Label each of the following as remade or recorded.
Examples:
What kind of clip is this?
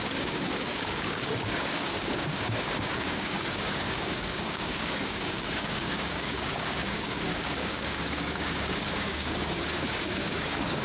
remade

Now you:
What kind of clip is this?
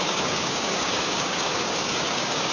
remade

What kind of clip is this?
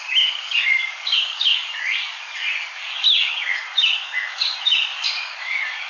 remade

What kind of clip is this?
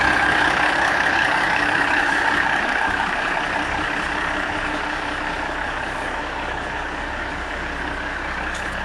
remade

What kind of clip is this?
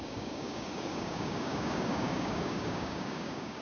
remade